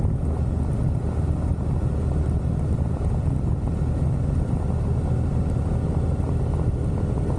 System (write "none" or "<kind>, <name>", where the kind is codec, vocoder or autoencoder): none